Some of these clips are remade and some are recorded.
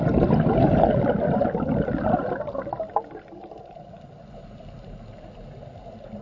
recorded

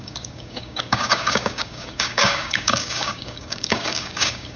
remade